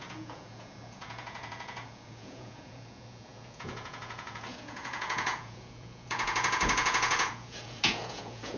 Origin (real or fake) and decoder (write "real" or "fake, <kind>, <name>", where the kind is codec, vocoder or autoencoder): fake, vocoder, Vocos